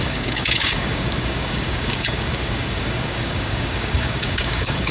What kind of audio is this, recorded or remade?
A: remade